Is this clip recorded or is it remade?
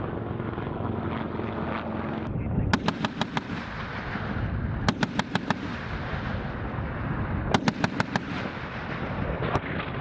recorded